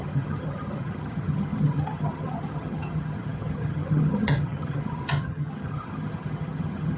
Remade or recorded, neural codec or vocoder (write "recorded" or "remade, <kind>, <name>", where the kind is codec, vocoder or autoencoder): remade, vocoder, HiFi-GAN